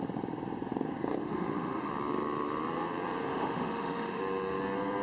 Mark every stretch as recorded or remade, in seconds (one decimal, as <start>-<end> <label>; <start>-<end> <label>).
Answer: 0.0-1.2 recorded; 1.2-1.9 remade; 1.9-3.3 recorded; 3.3-4.2 remade; 4.2-5.0 recorded

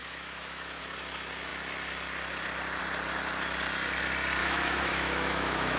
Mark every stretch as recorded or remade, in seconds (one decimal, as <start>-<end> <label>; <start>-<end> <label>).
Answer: 0.0-0.8 remade; 0.8-4.4 recorded; 4.4-5.8 remade

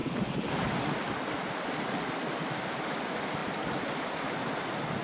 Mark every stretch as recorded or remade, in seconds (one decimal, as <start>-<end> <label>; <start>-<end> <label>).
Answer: 0.0-5.0 recorded

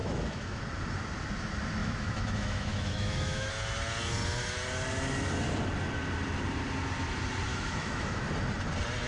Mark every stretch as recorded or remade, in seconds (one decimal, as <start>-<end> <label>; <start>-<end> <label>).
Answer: 0.0-0.6 remade; 0.6-1.8 recorded; 1.8-3.5 remade; 3.5-7.5 recorded; 7.5-8.2 remade; 8.2-9.1 recorded

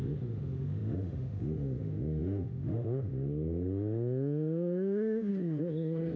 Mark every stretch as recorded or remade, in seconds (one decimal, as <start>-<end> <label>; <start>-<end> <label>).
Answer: 0.0-6.2 remade